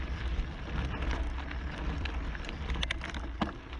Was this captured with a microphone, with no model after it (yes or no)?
yes